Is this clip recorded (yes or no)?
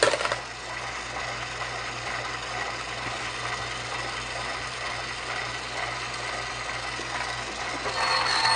yes